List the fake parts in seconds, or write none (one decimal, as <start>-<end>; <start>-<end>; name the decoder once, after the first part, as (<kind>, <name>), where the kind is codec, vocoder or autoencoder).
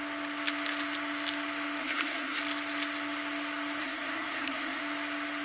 1.8-2.4 (codec, SNAC); 3.8-4.8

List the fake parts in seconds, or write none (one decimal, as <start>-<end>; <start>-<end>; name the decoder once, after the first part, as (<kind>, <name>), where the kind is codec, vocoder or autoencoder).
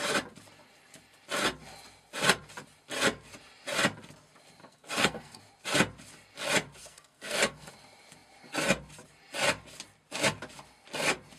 4.6-5.4 (codec, SNAC); 6.8-7.7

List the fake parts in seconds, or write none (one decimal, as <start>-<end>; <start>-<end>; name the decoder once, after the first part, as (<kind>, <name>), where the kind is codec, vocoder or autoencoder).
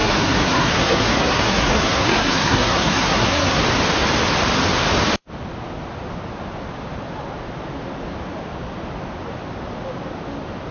0.0-3.6 (codec, SNAC)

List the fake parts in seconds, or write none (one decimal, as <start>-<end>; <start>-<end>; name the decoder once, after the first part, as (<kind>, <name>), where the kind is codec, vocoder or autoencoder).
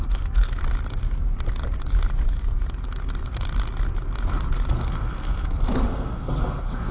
0.0-0.6 (codec, SNAC); 4.7-6.9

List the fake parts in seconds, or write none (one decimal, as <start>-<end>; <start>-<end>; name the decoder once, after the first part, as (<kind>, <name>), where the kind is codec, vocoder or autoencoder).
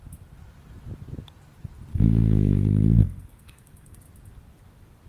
1.9-4.0 (codec, SNAC)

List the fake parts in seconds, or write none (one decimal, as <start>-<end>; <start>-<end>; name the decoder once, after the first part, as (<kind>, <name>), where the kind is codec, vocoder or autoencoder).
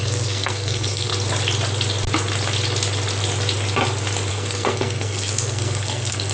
0.0-1.1 (codec, SNAC); 4.3-6.3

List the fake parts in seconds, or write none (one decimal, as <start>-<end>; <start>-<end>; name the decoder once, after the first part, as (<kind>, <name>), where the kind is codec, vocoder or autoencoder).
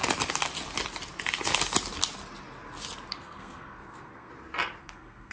3.1-4.3 (codec, SNAC); 4.8-5.3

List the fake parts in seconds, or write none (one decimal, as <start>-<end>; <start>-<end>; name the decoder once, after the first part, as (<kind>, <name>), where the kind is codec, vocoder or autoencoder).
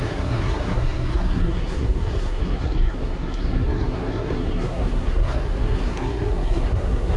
0.0-7.2 (codec, SNAC)